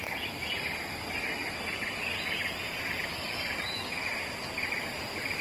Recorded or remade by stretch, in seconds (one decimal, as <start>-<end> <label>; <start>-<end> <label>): 0.0-5.4 recorded